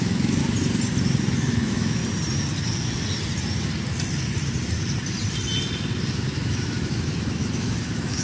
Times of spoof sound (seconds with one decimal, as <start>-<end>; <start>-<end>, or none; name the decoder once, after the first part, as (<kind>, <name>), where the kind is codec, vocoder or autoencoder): 0.0-0.4 (autoencoder, DAC-VAE); 1.4-2.0; 6.1-8.2